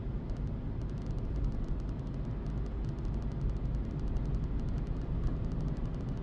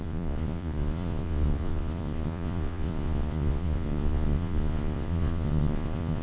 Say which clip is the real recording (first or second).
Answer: first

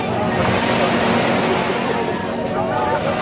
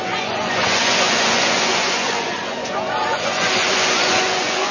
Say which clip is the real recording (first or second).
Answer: first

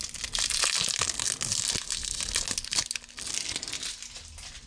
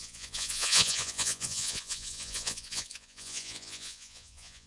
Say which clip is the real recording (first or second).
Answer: first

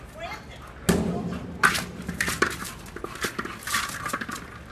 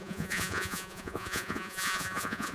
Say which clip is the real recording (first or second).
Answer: first